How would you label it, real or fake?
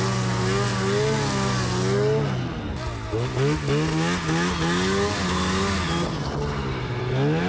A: real